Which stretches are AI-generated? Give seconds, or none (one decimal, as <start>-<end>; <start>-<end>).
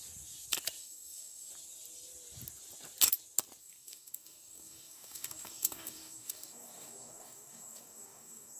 0.8-1.5; 3.6-8.6